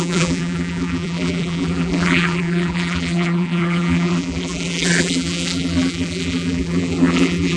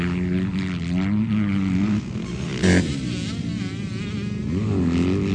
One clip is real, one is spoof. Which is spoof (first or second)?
first